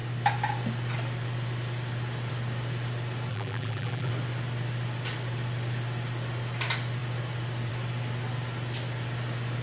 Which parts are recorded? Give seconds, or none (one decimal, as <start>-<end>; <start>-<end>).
0.0-3.3; 4.1-9.6